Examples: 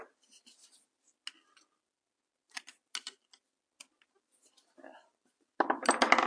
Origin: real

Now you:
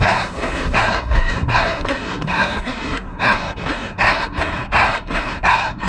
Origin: fake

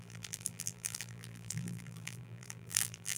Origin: fake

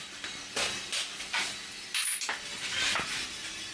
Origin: real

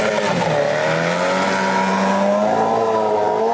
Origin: real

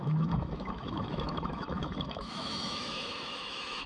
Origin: fake